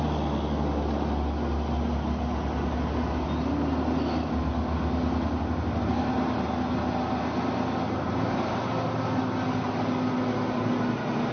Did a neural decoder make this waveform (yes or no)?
no